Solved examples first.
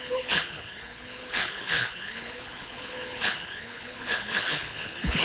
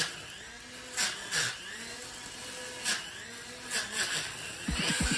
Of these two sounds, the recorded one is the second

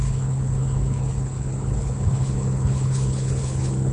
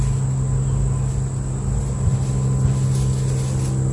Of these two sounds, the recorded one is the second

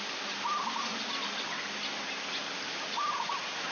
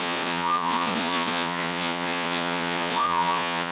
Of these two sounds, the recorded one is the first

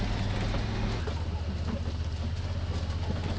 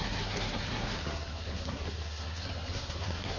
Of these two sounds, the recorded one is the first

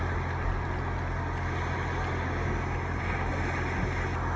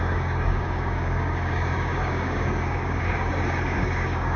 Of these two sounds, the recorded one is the first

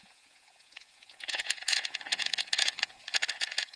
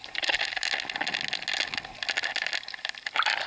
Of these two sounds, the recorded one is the second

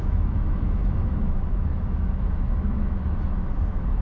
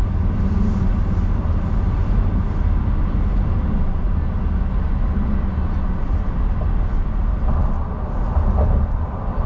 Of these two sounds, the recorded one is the second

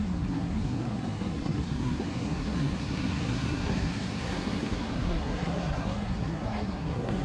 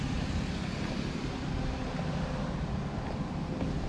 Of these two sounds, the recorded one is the second